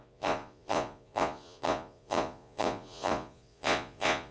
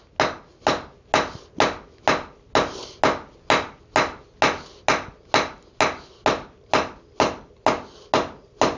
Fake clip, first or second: first